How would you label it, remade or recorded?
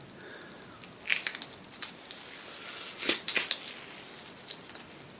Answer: recorded